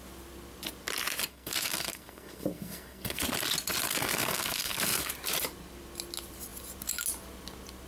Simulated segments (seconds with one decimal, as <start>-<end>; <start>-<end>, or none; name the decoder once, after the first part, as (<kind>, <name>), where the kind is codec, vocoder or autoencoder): 1.3-3.2 (codec, SNAC); 3.9-5.1